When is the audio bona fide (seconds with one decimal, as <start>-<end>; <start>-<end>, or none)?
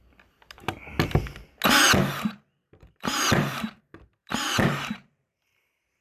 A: 0.0-2.6; 3.8-4.2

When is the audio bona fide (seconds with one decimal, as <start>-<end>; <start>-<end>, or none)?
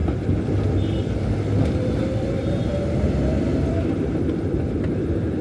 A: 0.0-1.7